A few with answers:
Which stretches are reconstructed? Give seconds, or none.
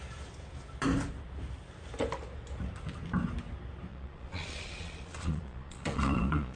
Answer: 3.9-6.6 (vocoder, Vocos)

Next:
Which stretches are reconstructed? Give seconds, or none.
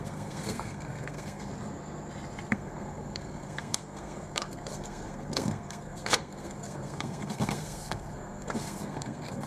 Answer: 0.0-1.5 (codec, SNAC); 2.5-9.5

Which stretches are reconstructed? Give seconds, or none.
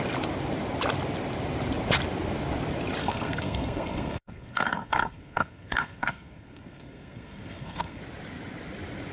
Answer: 3.0-8.0 (codec, SNAC)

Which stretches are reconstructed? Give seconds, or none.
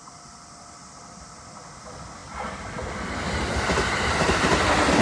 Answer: none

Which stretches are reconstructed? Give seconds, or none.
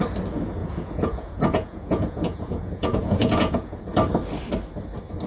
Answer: 0.6-3.8 (vocoder, Vocos)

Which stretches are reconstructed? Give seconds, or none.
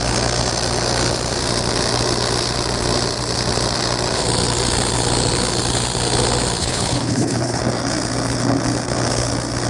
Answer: 6.6-7.6 (codec, HILCodec)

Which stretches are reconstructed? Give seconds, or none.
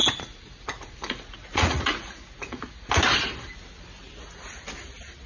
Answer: 0.0-2.9 (vocoder, Vocos)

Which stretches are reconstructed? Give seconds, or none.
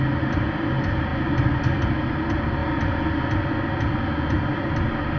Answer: none